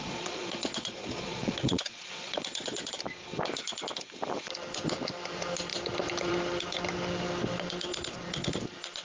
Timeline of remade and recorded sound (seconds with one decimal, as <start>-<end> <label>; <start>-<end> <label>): 0.0-2.9 remade; 2.9-7.9 recorded; 7.9-8.5 remade; 8.5-9.0 recorded